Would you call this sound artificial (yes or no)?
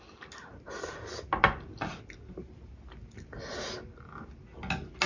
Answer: no